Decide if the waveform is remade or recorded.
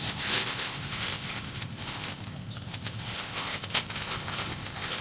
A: remade